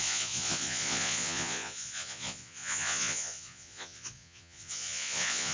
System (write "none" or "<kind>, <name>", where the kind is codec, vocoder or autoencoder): vocoder, Vocos